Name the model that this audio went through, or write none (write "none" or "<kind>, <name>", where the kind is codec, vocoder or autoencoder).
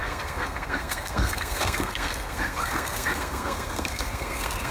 codec, SNAC